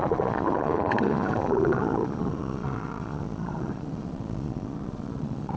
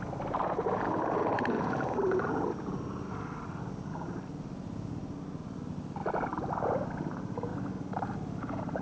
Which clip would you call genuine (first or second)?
second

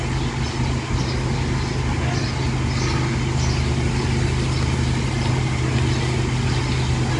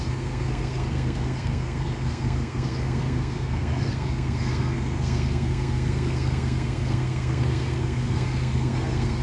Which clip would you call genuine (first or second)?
first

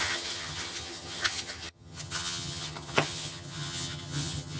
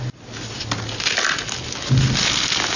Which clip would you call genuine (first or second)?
second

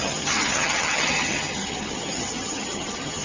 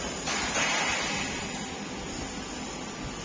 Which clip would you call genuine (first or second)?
second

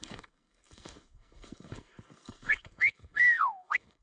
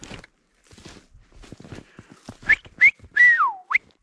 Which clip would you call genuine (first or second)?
second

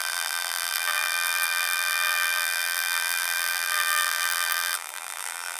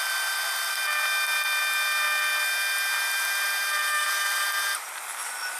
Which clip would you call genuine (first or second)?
second